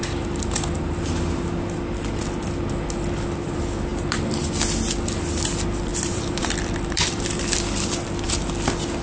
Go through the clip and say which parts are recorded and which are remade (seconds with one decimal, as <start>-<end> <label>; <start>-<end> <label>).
0.0-3.9 recorded; 3.9-4.4 remade; 4.4-5.9 recorded; 5.9-8.3 remade; 8.3-9.0 recorded